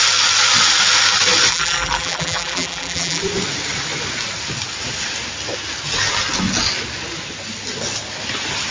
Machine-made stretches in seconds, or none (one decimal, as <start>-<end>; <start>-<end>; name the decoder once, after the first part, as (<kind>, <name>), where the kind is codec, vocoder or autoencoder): 1.5-3.2 (vocoder, BigVGAN v2)